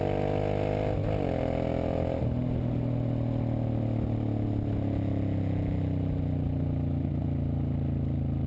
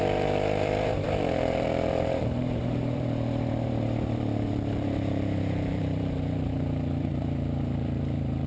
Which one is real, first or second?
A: first